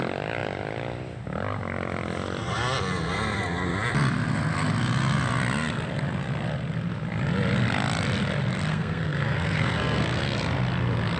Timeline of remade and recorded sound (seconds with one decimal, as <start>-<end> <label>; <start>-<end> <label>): 0.0-8.7 recorded; 8.7-10.2 remade; 10.2-11.2 recorded